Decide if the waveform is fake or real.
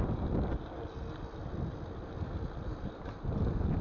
real